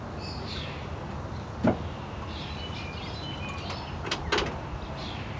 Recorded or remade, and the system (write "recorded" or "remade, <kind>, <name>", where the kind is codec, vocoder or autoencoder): recorded